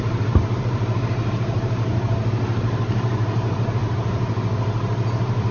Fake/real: fake